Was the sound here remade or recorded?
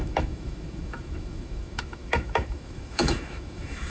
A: remade